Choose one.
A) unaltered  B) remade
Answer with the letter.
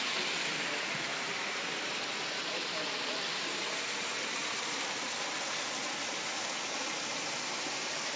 A